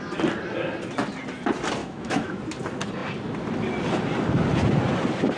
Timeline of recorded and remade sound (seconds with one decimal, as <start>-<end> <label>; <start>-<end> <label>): 0.0-1.8 recorded; 1.8-2.4 remade; 2.4-5.4 recorded